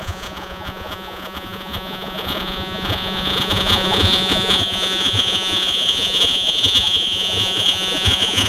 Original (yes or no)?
no